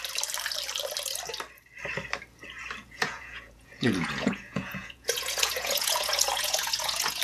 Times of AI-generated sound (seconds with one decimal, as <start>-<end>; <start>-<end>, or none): 2.8-7.2